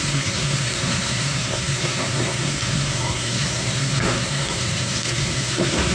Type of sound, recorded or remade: remade